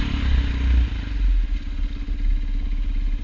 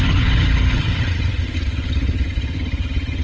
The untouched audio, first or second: first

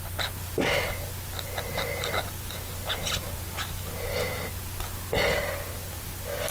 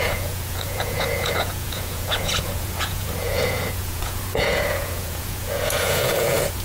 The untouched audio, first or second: first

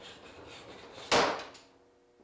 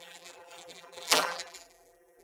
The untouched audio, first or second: first